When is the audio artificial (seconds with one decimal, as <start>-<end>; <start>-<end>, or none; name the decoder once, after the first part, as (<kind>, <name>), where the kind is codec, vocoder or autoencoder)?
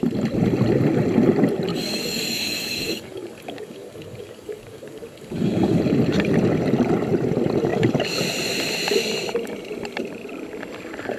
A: 1.7-5.8 (codec, DAC)